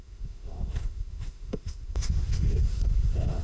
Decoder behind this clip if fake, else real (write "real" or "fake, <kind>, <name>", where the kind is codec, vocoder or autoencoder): fake, autoencoder, DAC-VAE